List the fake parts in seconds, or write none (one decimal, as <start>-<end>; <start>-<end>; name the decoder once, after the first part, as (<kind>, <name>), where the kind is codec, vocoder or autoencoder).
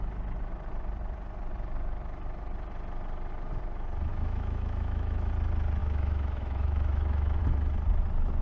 4.1-5.3 (autoencoder, DAC-VAE); 5.8-7.4